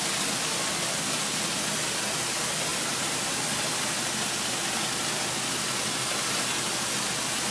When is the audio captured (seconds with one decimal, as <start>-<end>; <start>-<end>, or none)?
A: 0.0-2.7; 3.4-7.5